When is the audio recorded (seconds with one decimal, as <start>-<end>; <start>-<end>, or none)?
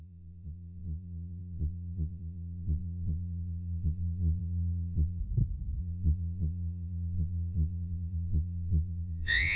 5.2-5.8